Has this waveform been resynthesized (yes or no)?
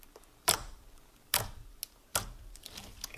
no